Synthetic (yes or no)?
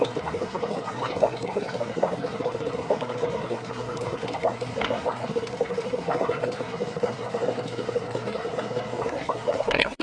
yes